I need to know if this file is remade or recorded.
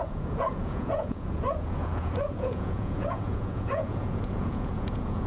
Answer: remade